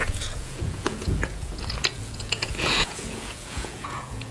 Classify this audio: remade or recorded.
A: remade